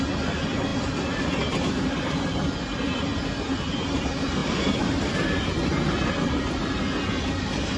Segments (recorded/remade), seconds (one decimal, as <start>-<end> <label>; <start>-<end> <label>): 0.0-7.8 recorded